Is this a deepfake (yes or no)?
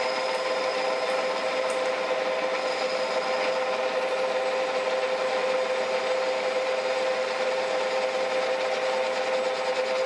no